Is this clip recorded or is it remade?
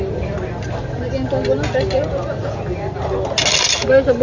recorded